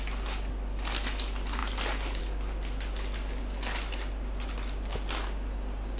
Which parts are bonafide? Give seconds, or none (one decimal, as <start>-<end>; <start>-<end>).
0.0-6.0